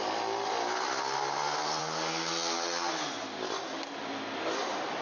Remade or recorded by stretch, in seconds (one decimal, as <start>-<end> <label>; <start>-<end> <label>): 0.0-5.0 recorded